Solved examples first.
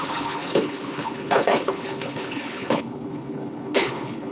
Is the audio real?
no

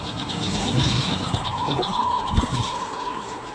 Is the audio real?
no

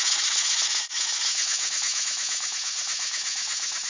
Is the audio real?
no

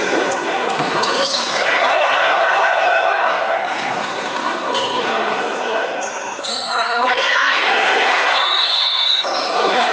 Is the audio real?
no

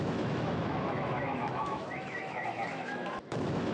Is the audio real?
no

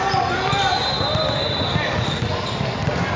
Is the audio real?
yes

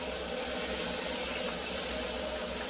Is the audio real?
yes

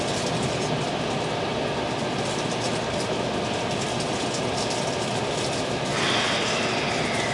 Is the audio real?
yes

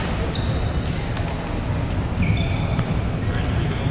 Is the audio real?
yes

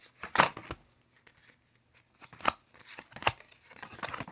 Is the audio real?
yes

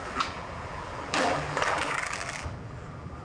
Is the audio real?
no